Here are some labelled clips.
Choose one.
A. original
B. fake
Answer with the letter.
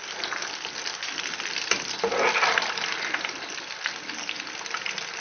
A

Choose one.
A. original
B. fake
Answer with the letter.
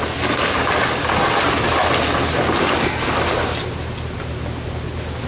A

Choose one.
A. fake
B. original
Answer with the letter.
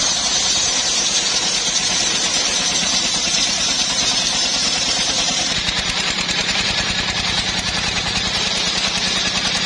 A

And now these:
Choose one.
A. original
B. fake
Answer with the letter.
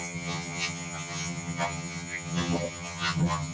B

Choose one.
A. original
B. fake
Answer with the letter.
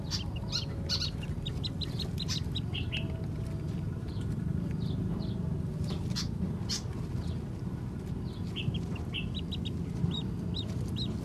A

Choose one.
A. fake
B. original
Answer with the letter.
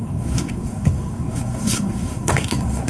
A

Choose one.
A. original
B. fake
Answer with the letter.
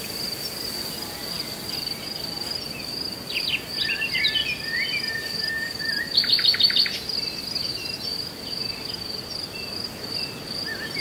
A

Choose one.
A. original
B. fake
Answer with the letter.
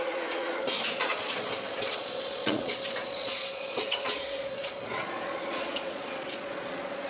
B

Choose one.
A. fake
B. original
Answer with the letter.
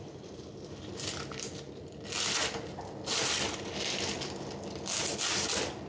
B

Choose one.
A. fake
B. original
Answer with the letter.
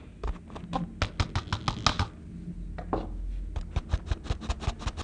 B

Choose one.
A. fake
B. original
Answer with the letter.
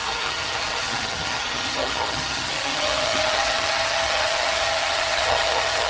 A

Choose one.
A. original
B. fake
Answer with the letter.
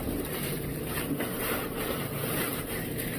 B